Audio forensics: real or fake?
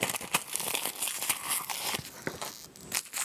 real